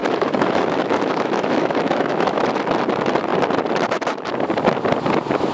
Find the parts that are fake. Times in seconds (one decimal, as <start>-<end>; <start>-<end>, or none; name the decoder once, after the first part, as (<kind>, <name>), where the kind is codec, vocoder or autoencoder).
0.0-2.4 (autoencoder, DAC-VAE)